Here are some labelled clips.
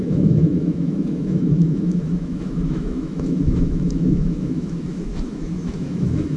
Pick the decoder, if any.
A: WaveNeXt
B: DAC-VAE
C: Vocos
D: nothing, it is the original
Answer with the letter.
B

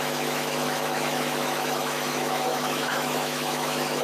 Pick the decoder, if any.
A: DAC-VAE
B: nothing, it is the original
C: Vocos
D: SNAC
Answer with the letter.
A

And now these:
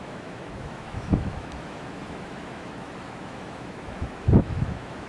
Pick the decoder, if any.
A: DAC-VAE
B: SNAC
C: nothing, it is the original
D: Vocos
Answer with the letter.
A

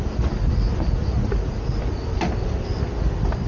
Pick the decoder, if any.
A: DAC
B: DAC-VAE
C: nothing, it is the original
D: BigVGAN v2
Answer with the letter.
C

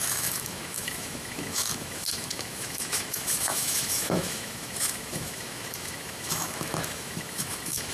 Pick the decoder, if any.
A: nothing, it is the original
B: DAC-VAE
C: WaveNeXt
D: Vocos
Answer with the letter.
B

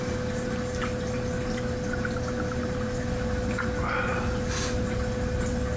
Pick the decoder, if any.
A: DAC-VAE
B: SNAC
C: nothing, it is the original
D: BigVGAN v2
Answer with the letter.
C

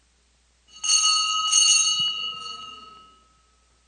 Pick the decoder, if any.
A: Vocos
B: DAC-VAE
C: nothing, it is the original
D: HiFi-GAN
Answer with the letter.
C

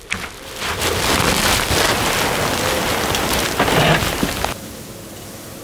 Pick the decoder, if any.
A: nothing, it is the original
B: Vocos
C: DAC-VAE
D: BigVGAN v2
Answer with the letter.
A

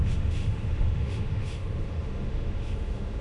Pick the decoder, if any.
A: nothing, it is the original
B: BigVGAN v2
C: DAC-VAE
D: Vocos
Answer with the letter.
C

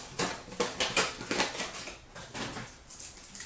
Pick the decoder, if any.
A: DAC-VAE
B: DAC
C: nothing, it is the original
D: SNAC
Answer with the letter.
C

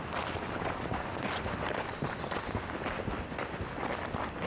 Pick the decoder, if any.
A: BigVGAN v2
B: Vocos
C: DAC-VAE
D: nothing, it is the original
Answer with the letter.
D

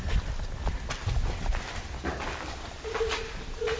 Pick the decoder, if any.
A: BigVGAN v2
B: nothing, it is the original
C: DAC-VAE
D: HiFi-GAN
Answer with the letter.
B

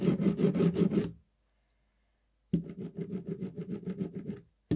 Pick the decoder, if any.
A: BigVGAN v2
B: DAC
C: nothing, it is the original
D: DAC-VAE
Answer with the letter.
C